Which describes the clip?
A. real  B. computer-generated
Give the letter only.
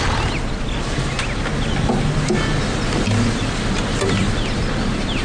A